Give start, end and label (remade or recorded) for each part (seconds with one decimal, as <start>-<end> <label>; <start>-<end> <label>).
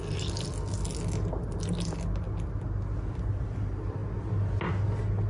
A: 0.0-5.3 recorded